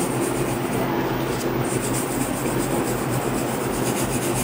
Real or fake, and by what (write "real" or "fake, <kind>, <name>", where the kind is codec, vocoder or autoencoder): real